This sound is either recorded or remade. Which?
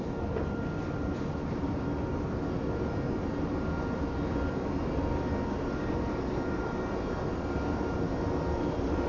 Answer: recorded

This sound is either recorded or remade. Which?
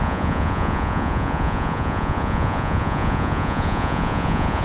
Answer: remade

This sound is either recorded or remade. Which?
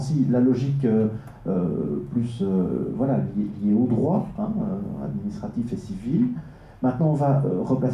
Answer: recorded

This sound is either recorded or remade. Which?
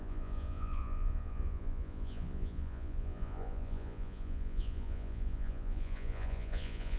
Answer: remade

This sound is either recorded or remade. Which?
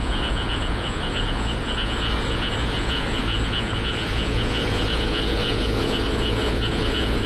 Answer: remade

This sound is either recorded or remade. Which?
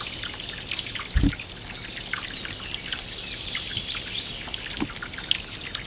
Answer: recorded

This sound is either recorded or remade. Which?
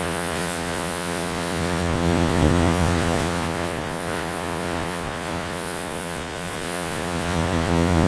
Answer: remade